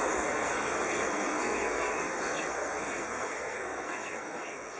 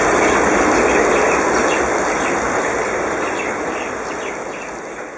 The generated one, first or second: first